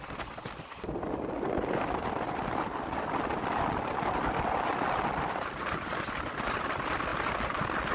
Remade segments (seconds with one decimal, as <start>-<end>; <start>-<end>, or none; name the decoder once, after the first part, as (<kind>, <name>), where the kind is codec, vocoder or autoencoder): none